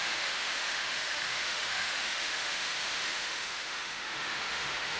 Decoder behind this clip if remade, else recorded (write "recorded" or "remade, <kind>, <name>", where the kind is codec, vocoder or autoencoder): remade, autoencoder, DAC-VAE